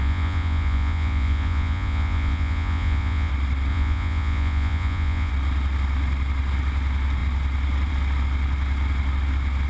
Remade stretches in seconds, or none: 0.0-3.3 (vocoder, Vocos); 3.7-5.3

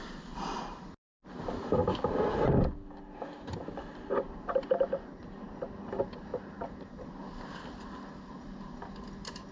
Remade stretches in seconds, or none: none

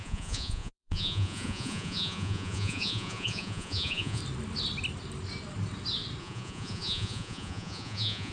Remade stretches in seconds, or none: 0.0-4.2 (vocoder, Vocos); 6.2-8.3

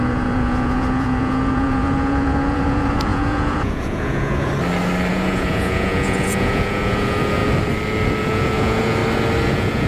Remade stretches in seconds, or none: 0.0-4.5 (vocoder, Vocos); 5.1-7.4; 8.2-9.0; 9.5-9.9

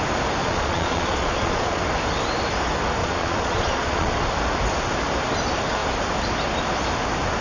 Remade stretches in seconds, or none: 0.4-1.8 (vocoder, Vocos); 3.0-4.1

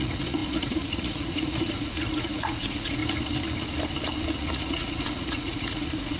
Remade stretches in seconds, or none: 0.0-3.0 (vocoder, Vocos); 4.3-6.2

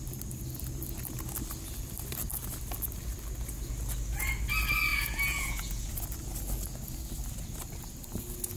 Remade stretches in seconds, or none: 4.9-5.9 (vocoder, Vocos)

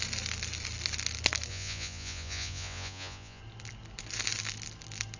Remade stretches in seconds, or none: 1.5-3.4 (vocoder, Vocos)